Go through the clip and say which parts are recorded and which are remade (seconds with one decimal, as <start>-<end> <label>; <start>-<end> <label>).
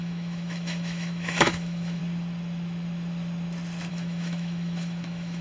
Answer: 0.0-2.0 remade; 2.0-3.9 recorded; 3.9-5.4 remade